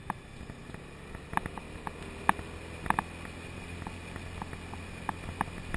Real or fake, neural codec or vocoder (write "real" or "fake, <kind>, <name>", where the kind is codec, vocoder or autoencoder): real